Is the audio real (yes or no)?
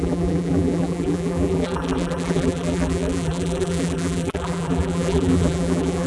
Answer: no